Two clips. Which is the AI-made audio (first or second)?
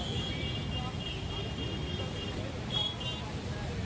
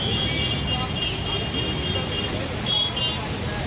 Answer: first